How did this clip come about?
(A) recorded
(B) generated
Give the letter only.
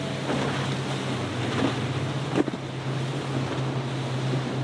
A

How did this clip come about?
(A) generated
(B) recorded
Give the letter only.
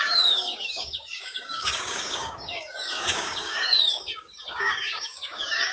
A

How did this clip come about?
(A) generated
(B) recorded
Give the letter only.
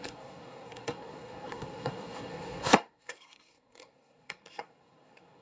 A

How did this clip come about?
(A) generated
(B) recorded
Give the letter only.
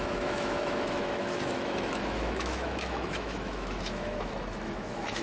A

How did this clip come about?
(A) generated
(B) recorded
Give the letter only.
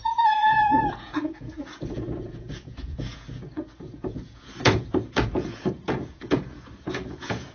A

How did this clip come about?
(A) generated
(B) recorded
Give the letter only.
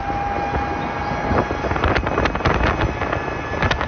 B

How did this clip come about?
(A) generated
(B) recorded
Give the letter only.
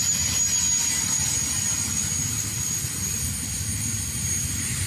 B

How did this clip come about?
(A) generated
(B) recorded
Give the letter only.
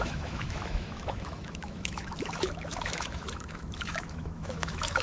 A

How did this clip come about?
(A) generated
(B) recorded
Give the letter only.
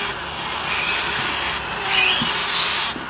B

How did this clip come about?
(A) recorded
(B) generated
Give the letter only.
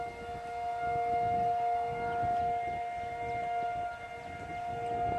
A